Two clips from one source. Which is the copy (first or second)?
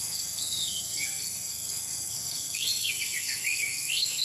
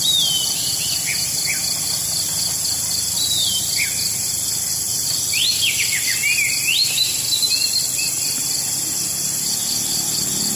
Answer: first